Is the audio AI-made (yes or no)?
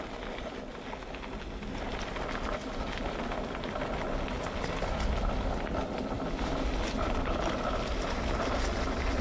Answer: no